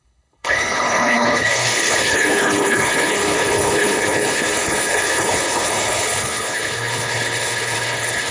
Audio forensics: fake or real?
fake